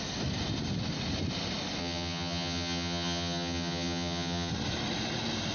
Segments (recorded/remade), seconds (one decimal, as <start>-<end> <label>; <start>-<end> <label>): 0.0-1.8 recorded; 1.8-4.5 remade; 4.5-5.5 recorded